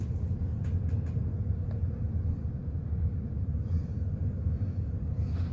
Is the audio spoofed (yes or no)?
no